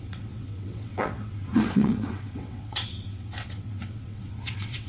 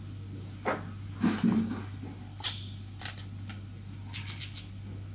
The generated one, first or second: first